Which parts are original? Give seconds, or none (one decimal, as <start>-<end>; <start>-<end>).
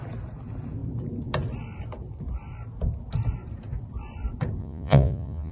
0.0-4.6